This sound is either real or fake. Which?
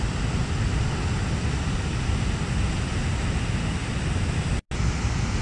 real